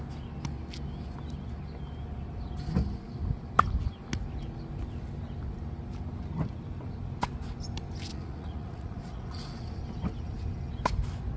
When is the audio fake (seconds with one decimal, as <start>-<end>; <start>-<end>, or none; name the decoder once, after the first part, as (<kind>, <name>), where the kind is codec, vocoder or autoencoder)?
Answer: 8.1-9.6 (vocoder, Vocos)